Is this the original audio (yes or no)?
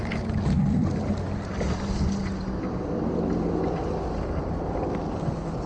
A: yes